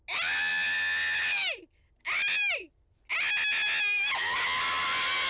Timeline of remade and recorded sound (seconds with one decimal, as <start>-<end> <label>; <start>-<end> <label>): 0.0-5.3 recorded